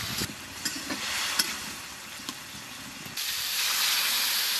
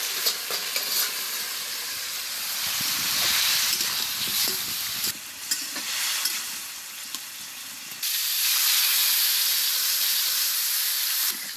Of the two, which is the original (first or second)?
first